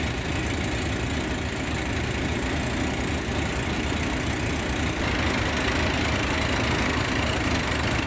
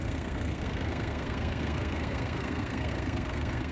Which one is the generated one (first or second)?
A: second